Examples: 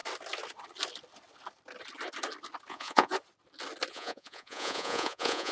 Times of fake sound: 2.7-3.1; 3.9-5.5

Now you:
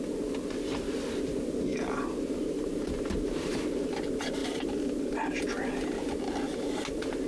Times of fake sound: 1.7-3.6; 4.4-5.0

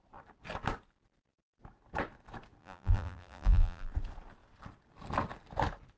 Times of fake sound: 2.6-3.9

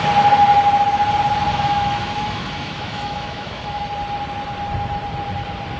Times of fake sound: 1.5-3.8